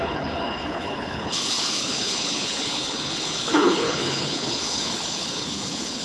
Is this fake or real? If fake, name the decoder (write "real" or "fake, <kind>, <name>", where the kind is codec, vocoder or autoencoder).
fake, codec, HILCodec